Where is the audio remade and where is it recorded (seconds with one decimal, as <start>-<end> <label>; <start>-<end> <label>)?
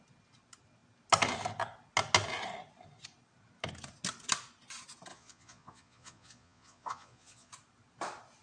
0.0-5.1 recorded; 5.1-7.5 remade; 7.5-8.4 recorded